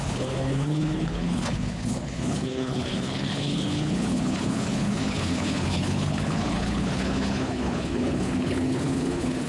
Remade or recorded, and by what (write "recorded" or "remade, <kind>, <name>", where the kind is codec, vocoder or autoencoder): remade, codec, HILCodec